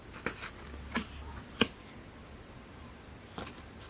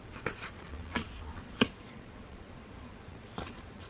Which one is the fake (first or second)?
second